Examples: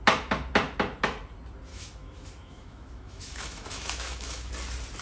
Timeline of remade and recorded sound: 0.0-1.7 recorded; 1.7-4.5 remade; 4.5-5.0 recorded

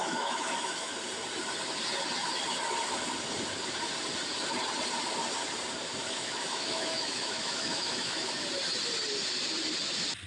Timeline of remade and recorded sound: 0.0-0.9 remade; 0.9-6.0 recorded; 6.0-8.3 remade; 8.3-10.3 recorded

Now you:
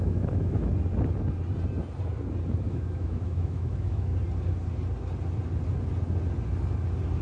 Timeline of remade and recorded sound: 0.0-0.7 remade; 0.7-2.7 recorded; 2.7-4.1 remade; 4.1-7.2 recorded